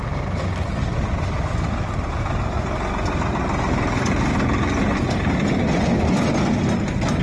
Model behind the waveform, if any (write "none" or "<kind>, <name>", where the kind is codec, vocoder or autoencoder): none